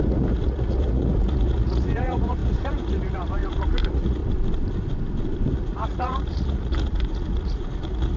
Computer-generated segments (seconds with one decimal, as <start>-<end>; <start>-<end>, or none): 0.0-4.2; 5.5-8.2